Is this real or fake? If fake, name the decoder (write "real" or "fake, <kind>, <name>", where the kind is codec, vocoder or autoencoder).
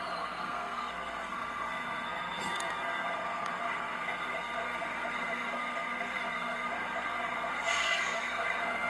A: fake, codec, SNAC